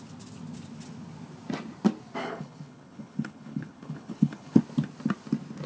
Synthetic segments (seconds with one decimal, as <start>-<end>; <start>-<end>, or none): 2.2-4.6